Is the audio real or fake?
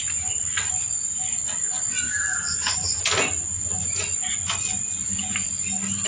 real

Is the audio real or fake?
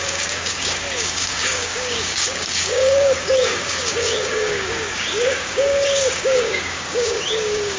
fake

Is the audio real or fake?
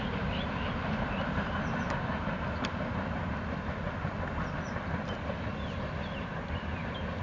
real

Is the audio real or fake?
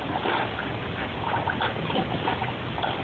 real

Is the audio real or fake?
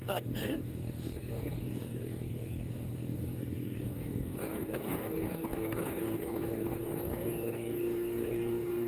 fake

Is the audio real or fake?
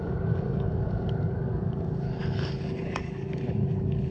fake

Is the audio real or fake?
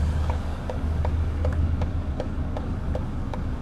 fake